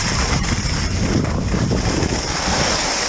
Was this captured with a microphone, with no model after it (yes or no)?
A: yes